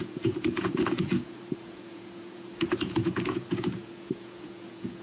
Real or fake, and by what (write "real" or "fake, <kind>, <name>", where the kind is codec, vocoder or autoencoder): fake, vocoder, Vocos